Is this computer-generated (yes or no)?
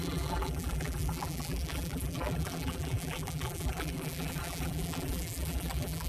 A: yes